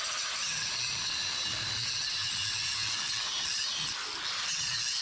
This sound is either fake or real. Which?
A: real